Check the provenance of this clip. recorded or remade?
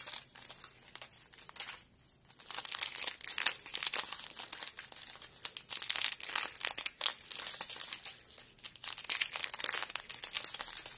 recorded